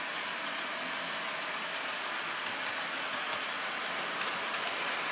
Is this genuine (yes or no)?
yes